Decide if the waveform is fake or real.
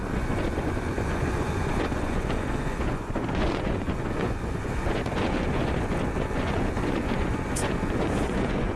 fake